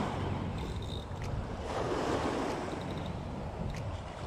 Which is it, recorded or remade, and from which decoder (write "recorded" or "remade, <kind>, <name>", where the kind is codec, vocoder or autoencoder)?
recorded